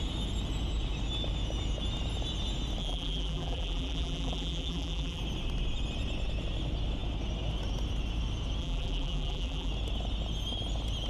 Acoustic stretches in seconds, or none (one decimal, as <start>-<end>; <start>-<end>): 0.0-2.8; 5.2-8.6; 9.7-11.1